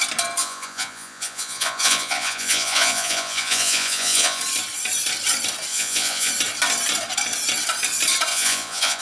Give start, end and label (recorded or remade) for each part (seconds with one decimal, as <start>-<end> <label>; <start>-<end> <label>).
0.0-0.4 recorded; 0.4-4.4 remade; 4.4-5.7 recorded; 5.7-6.3 remade; 6.3-8.3 recorded; 8.3-9.0 remade